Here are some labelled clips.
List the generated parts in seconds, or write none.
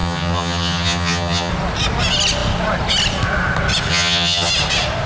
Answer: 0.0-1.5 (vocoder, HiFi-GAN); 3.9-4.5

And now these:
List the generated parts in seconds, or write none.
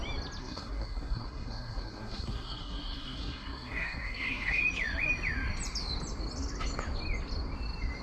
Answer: 0.4-4.6 (codec, SNAC)